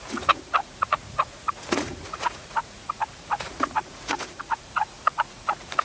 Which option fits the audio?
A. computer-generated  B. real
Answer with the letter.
A